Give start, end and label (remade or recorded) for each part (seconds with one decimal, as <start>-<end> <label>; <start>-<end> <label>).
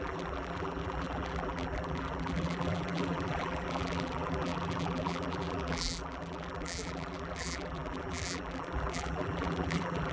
0.0-10.1 remade